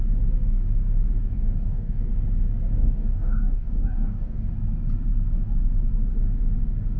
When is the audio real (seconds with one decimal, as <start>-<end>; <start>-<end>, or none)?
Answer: 0.0-1.2; 2.1-2.7; 4.5-7.0